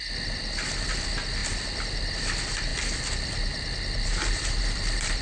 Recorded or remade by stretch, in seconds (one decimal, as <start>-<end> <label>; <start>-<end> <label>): 0.0-1.4 recorded; 1.4-2.1 remade; 2.1-2.7 recorded; 2.7-4.5 remade; 4.5-5.2 recorded